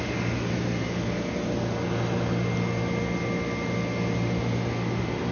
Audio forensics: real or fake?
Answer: real